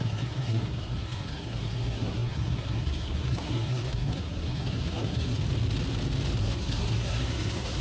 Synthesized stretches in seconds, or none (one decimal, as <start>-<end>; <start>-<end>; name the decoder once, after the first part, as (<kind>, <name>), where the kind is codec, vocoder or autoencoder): 0.0-5.4 (codec, SNAC); 6.4-7.8